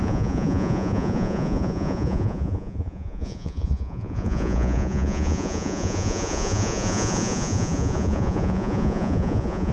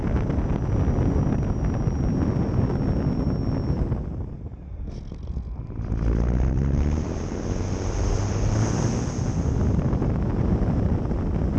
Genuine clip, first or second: second